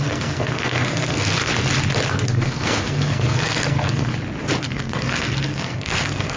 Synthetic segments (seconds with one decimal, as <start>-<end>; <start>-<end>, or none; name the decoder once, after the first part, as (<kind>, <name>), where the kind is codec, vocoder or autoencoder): 0.0-1.5 (codec, SNAC); 2.1-4.1; 4.6-6.4